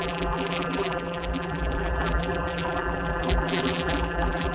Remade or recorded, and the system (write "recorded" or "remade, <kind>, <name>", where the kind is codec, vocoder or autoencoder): remade, vocoder, BigVGAN v2